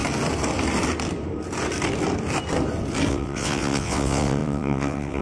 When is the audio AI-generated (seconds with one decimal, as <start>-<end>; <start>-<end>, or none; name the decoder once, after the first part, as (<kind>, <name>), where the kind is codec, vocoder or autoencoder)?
3.1-5.2 (vocoder, WaveNeXt)